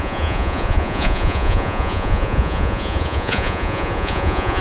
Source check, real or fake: fake